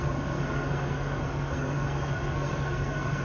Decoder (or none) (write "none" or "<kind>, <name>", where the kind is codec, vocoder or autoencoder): codec, SNAC